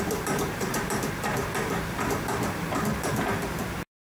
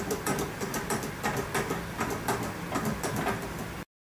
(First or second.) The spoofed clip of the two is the first